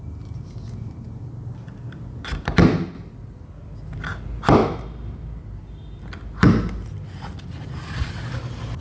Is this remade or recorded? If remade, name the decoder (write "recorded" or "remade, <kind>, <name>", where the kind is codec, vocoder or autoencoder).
recorded